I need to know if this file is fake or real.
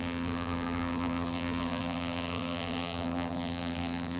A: fake